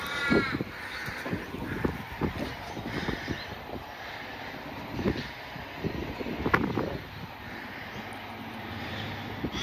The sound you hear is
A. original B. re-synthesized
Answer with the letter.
A